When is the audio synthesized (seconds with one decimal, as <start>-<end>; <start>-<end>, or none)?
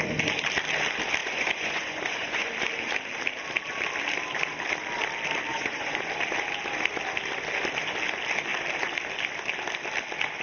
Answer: 1.2-2.5; 5.5-6.1